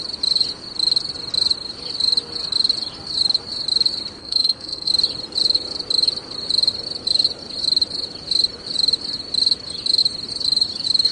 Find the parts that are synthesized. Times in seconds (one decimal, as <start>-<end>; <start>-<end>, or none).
4.2-4.9